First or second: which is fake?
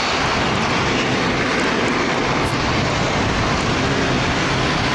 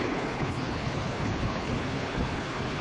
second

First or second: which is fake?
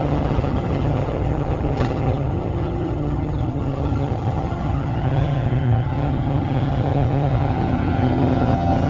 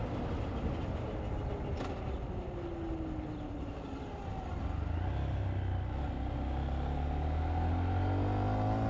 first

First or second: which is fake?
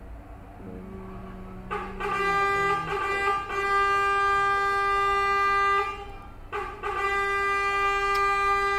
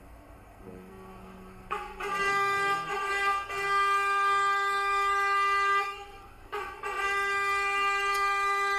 second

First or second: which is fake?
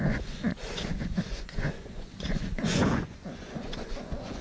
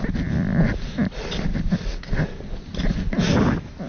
first